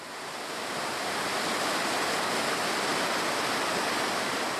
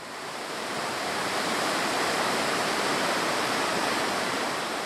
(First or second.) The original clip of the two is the first